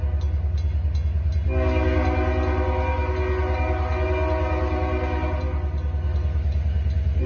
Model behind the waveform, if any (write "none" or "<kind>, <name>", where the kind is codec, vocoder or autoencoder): none